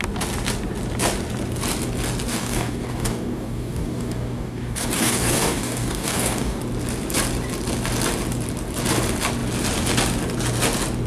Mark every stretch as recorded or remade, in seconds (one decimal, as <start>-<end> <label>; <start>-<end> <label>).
0.0-2.3 recorded; 2.3-6.6 remade; 6.6-11.1 recorded

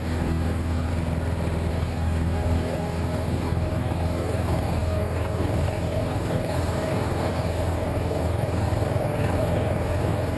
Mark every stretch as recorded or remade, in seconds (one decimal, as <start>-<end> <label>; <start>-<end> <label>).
0.0-0.9 remade; 0.9-1.7 recorded; 1.7-10.4 remade

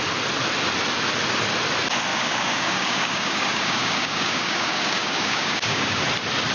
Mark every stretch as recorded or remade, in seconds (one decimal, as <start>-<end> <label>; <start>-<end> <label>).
0.0-2.1 recorded; 2.1-6.0 remade; 6.0-6.5 recorded

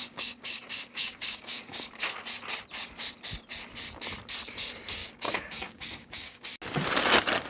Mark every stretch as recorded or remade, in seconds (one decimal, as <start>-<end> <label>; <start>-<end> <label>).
0.0-1.9 remade; 1.9-5.0 recorded; 5.0-6.4 remade; 6.4-7.5 recorded